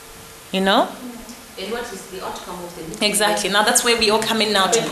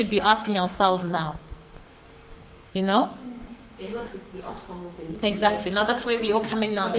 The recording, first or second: first